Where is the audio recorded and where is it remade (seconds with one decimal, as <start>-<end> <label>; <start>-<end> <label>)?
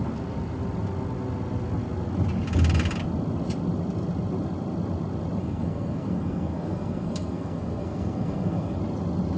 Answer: 0.0-5.4 recorded; 5.4-8.8 remade; 8.8-9.4 recorded